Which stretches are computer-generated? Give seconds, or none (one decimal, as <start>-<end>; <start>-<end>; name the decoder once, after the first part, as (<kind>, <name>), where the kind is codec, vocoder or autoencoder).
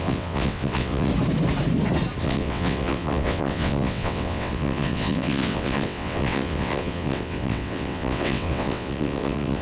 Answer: 0.0-1.1 (vocoder, WaveNeXt); 2.2-9.6